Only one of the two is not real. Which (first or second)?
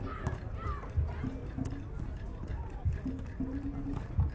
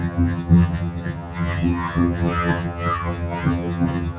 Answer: second